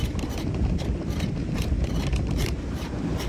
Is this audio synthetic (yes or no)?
yes